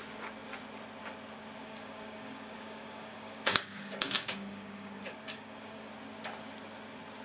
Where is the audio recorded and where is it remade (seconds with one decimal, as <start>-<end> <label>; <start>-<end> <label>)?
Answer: 0.0-1.6 recorded; 1.6-5.9 remade; 5.9-7.2 recorded